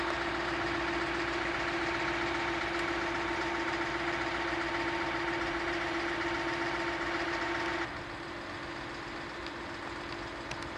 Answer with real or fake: real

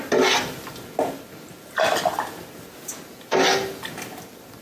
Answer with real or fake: real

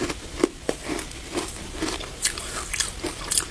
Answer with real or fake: real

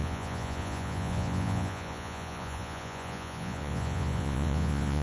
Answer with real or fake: fake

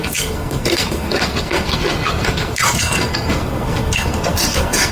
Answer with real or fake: fake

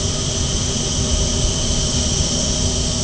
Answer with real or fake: real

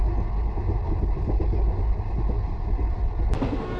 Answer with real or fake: real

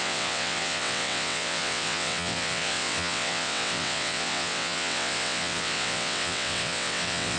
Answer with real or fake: fake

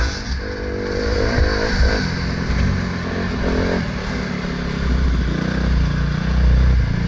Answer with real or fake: real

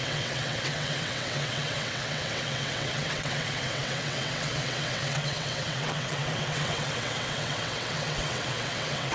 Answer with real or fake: fake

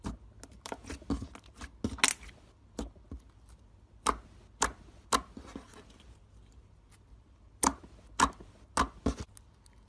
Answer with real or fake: real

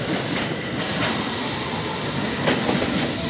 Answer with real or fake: real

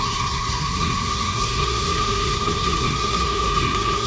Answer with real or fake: fake